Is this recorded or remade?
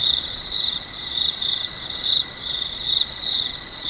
remade